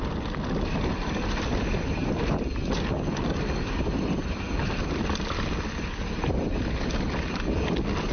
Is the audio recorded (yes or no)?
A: yes